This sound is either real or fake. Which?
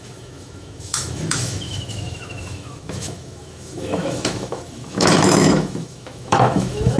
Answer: fake